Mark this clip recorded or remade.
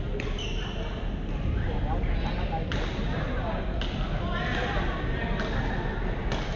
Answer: recorded